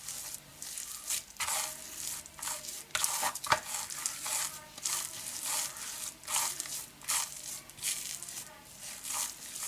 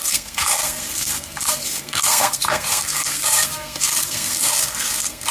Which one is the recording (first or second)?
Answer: first